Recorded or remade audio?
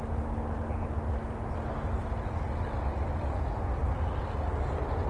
recorded